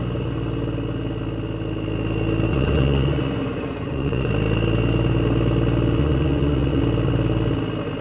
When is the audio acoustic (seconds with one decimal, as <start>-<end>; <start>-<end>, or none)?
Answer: 0.0-2.5; 4.3-6.0; 6.8-8.0